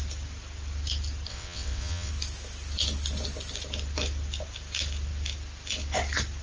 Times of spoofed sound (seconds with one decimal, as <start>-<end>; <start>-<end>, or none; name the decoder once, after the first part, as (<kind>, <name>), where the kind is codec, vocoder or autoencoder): 1.3-2.1 (vocoder, WaveNeXt)

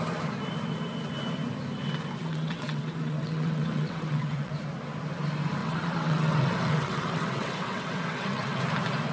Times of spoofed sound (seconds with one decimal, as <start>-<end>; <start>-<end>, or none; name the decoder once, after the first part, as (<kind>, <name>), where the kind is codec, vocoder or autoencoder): 2.2-4.5 (vocoder, WaveNeXt); 5.6-8.6

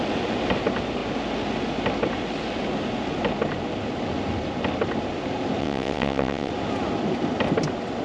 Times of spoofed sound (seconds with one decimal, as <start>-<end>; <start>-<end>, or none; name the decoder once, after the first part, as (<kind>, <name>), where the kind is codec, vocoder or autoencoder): 5.6-6.5 (vocoder, WaveNeXt)

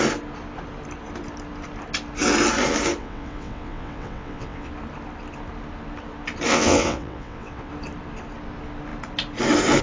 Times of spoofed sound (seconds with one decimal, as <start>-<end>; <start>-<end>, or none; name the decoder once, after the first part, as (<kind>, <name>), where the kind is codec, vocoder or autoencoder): 3.0-4.7 (vocoder, WaveNeXt); 6.5-7.7

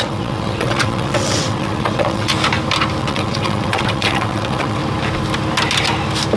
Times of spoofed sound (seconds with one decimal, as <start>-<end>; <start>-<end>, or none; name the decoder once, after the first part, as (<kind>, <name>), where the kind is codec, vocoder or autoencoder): 0.0-2.3 (vocoder, WaveNeXt); 3.0-4.8

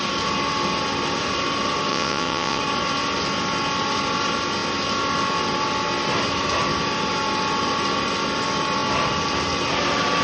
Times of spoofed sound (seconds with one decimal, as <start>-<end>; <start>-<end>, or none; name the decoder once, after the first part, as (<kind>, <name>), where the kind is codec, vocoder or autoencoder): 1.9-2.6 (vocoder, WaveNeXt)

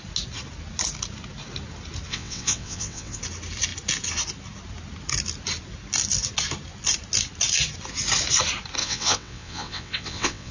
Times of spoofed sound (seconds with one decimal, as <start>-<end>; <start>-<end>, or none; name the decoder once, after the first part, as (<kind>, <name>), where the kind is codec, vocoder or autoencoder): 2.1-3.2 (vocoder, WaveNeXt); 8.8-10.5